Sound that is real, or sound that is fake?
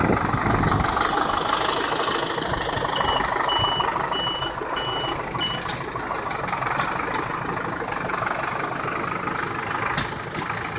real